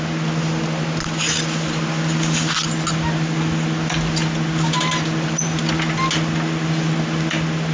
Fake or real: real